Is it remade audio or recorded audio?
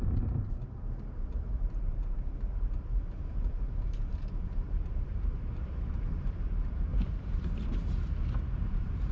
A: remade